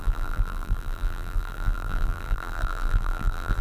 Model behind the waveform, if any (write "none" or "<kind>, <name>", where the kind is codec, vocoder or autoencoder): vocoder, BigVGAN v2